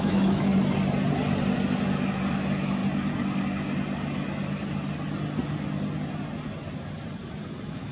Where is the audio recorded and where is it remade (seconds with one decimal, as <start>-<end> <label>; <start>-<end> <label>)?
0.0-0.5 remade; 0.5-2.3 recorded; 2.3-2.8 remade; 2.8-7.5 recorded; 7.5-7.9 remade